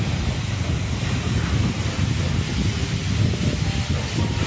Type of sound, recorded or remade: recorded